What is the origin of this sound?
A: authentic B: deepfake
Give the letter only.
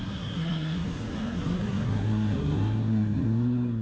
B